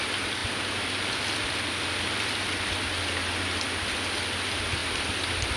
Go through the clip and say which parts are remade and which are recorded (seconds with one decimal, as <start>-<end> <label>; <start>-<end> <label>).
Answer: 0.0-5.6 recorded